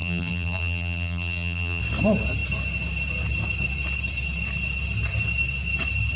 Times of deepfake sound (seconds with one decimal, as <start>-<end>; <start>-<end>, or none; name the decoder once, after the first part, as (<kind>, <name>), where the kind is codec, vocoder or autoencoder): 0.0-1.8 (vocoder, BigVGAN v2)